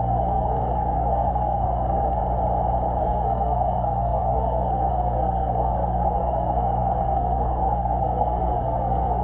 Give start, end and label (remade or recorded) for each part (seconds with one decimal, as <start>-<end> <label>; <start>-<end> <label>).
0.0-2.2 remade; 2.2-3.0 recorded; 3.0-9.2 remade